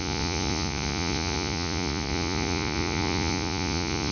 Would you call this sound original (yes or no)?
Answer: no